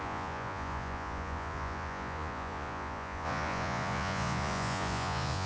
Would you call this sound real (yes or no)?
no